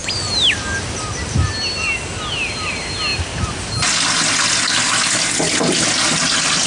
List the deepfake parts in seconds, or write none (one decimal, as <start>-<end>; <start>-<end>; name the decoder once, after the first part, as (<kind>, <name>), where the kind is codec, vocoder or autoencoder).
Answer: none